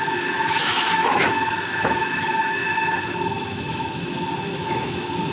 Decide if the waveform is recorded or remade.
remade